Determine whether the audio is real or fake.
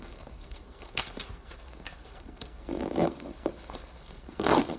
fake